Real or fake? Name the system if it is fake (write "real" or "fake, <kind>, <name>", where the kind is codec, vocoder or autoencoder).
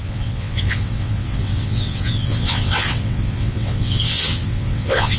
fake, vocoder, WaveNeXt